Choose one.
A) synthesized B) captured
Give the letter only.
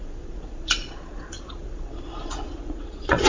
A